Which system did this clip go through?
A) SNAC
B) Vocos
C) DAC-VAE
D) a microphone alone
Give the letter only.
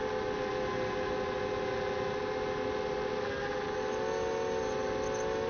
D